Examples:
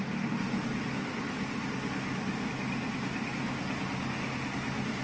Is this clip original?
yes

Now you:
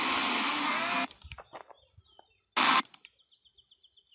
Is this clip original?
yes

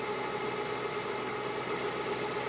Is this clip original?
yes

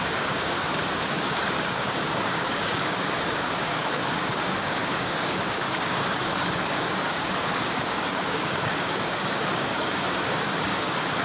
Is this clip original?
no